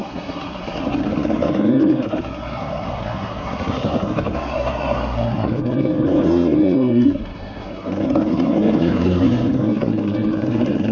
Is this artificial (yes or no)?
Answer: yes